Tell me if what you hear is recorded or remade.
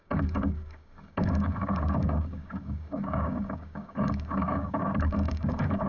remade